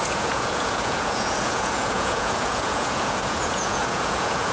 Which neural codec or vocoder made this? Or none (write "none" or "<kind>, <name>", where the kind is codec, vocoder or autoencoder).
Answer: vocoder, Vocos